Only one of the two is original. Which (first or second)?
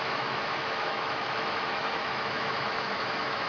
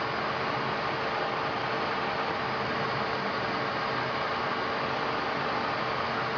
second